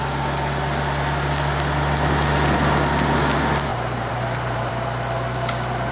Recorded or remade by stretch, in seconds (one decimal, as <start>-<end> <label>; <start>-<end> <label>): 0.0-3.7 recorded; 3.7-4.7 remade; 4.7-5.9 recorded